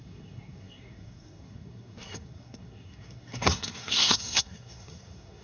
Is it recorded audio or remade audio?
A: remade